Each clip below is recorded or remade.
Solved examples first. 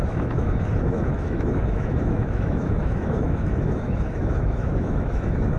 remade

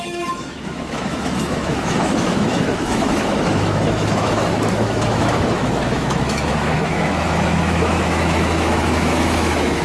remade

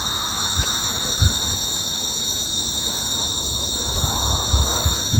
remade